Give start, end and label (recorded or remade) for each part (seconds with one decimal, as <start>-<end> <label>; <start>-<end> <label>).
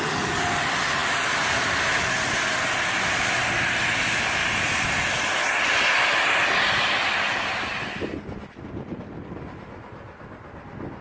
0.0-11.0 recorded